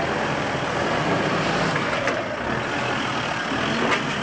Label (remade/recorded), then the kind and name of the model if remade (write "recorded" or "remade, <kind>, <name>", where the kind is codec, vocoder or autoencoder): recorded